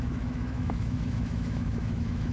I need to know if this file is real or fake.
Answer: fake